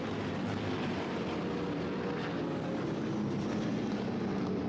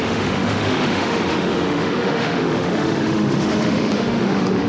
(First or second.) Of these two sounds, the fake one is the second